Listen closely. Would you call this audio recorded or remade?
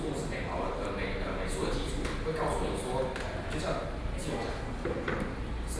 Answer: recorded